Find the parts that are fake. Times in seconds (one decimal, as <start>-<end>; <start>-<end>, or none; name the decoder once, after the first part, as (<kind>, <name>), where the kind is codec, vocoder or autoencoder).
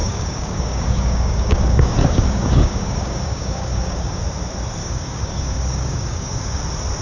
0.0-4.2 (codec, DAC); 4.8-6.6